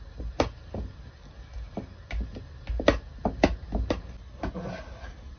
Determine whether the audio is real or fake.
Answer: real